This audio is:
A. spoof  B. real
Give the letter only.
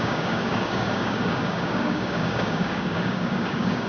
A